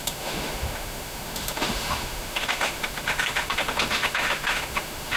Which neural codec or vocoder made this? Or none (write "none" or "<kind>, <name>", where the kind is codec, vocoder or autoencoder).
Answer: autoencoder, DAC-VAE